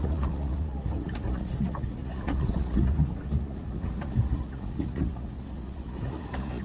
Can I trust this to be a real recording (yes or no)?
no